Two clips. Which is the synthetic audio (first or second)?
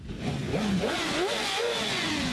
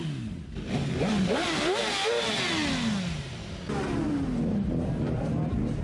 first